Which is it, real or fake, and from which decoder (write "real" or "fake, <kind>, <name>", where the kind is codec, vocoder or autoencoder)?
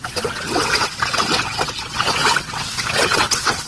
fake, vocoder, WaveNeXt